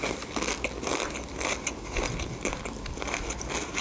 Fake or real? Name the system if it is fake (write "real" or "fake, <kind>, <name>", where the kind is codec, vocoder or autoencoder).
real